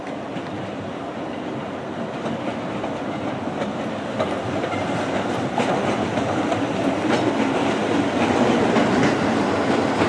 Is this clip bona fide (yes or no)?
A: yes